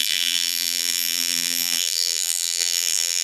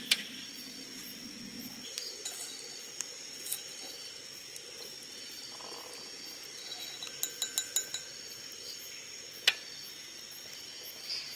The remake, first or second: first